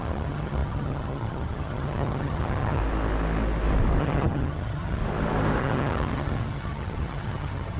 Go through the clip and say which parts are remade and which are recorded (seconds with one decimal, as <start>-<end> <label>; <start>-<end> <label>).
0.0-2.8 remade; 2.8-4.0 recorded; 4.0-5.0 remade; 5.0-5.6 recorded; 5.6-7.8 remade